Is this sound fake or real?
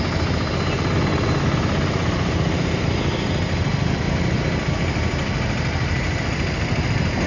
real